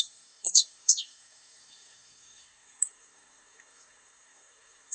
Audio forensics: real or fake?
fake